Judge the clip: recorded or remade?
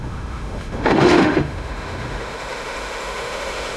remade